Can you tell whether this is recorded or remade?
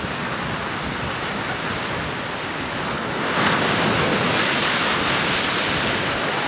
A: recorded